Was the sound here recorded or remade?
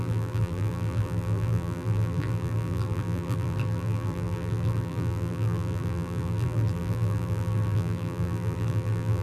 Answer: remade